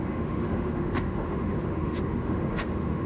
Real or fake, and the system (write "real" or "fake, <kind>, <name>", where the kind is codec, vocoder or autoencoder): fake, autoencoder, DAC-VAE